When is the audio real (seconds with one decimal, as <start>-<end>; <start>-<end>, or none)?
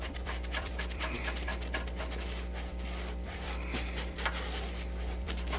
1.5-2.7